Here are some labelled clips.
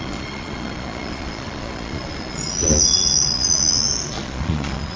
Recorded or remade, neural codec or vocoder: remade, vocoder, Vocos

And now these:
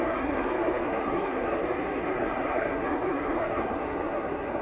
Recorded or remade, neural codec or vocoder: remade, codec, SNAC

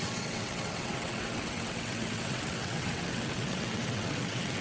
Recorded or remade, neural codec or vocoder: remade, vocoder, WaveNeXt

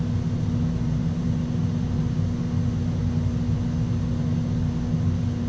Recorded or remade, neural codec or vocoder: recorded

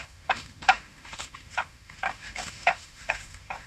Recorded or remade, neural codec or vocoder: remade, autoencoder, DAC-VAE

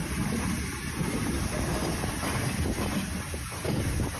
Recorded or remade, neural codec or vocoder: recorded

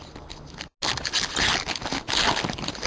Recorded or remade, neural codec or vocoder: recorded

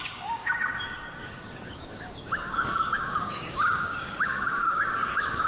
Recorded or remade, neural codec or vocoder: remade, codec, DAC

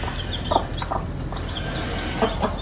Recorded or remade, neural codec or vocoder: recorded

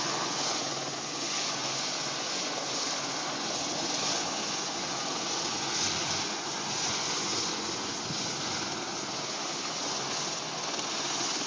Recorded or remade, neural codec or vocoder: remade, vocoder, Vocos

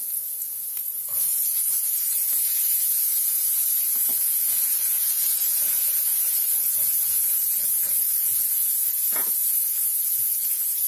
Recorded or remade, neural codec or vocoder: remade, vocoder, Vocos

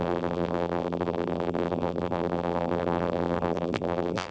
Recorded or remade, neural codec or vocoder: remade, vocoder, BigVGAN v2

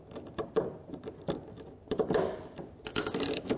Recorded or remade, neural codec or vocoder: recorded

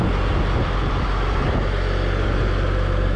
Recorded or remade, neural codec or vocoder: recorded